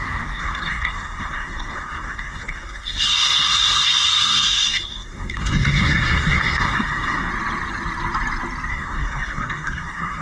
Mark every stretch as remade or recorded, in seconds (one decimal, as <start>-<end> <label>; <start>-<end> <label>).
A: 0.0-7.3 remade; 7.3-8.7 recorded; 8.7-10.2 remade